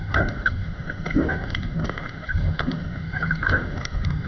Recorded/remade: remade